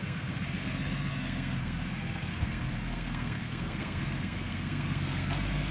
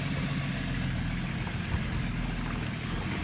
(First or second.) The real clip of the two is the second